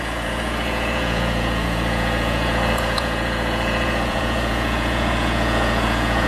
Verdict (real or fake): fake